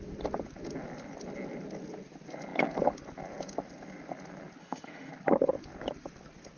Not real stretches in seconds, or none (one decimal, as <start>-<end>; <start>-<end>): 4.6-5.1